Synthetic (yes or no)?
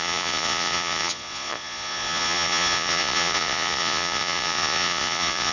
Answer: yes